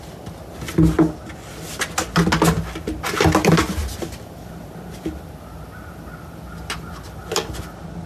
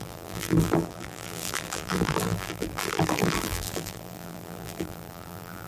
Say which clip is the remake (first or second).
second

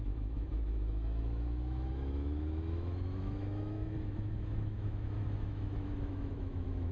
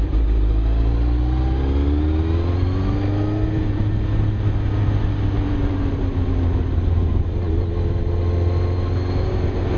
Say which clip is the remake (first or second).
first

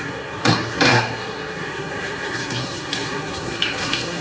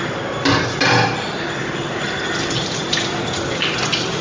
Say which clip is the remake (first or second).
first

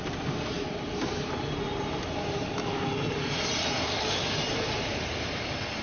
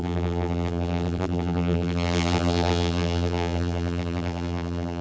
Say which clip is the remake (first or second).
second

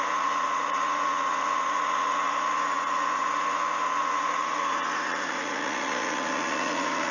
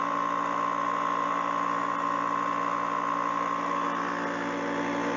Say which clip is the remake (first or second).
first